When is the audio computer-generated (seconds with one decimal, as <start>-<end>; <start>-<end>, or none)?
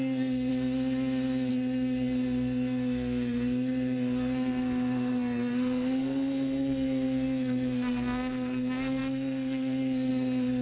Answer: 0.0-0.5; 1.5-10.6